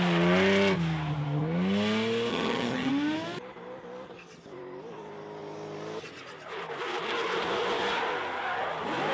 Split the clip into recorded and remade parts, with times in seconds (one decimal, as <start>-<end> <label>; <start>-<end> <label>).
0.0-2.3 recorded; 2.3-2.9 remade; 2.9-9.1 recorded